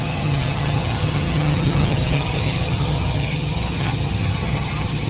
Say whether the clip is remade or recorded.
remade